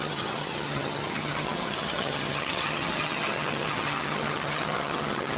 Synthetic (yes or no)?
yes